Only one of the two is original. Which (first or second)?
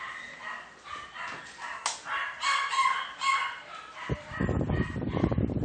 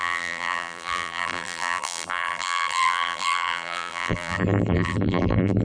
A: first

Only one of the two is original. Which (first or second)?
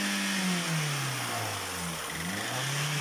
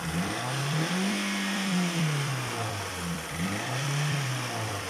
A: first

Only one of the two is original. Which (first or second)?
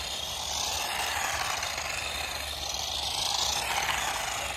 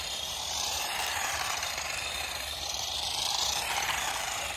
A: first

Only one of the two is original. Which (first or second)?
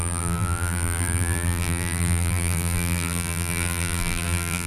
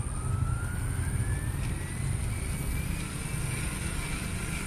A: second